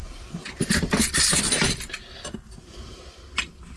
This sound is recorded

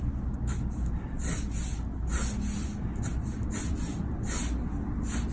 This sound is recorded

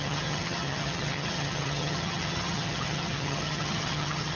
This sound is remade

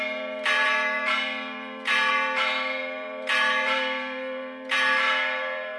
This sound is remade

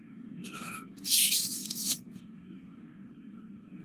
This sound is remade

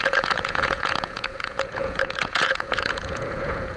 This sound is remade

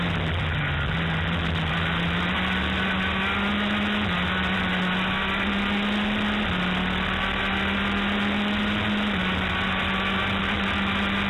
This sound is recorded